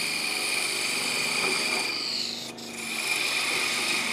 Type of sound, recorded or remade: recorded